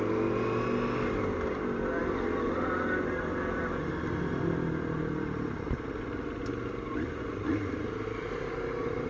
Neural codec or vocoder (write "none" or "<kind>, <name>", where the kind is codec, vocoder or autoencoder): none